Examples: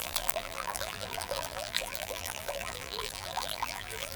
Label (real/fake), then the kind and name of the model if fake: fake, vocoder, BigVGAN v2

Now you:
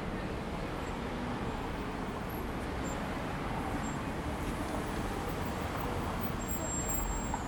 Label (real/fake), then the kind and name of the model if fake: real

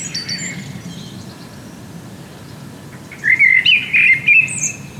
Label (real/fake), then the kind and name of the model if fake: fake, vocoder, BigVGAN v2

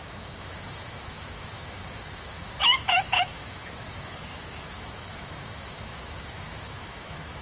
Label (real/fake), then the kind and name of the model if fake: fake, autoencoder, DAC-VAE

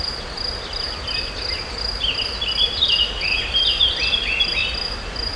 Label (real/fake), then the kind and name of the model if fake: real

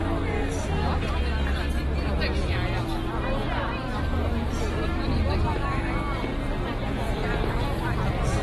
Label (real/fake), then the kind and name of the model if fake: real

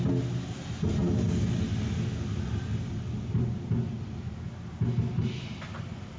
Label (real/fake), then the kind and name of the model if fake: real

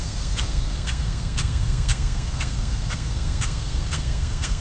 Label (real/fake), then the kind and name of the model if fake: fake, codec, SNAC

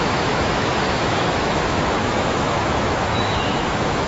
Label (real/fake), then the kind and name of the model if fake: fake, autoencoder, DAC-VAE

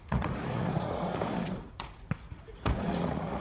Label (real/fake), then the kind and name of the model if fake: fake, vocoder, Vocos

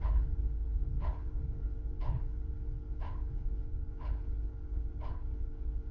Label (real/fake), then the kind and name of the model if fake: fake, codec, HILCodec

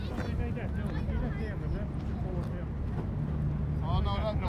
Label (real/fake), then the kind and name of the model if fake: real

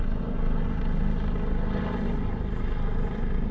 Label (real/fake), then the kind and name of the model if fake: real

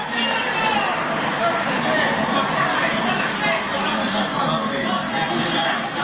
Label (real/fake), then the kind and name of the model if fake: real